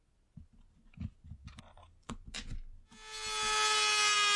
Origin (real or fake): real